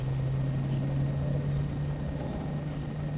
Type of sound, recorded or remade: recorded